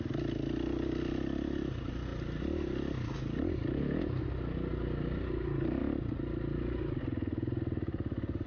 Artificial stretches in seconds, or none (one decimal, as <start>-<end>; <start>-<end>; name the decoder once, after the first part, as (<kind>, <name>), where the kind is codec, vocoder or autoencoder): none

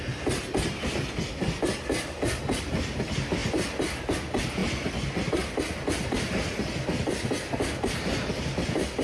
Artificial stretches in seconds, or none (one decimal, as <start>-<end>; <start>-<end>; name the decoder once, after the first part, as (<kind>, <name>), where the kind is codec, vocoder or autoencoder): none

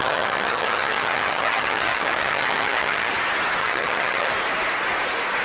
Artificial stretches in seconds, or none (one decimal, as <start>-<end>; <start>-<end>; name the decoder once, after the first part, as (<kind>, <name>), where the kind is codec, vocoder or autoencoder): 0.0-3.1 (vocoder, HiFi-GAN); 3.6-4.3

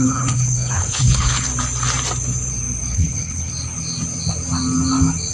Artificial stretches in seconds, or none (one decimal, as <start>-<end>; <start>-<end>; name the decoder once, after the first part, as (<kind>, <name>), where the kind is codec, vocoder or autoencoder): 0.0-1.5 (codec, HILCodec); 2.9-3.5

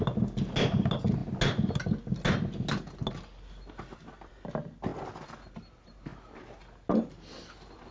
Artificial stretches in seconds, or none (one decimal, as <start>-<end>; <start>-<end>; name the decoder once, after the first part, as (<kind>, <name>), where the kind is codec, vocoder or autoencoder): none

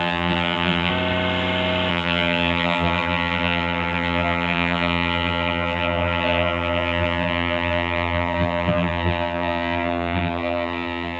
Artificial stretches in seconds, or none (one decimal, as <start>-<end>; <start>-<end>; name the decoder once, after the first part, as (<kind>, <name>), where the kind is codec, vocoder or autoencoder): 0.0-0.9 (vocoder, BigVGAN v2); 1.9-11.2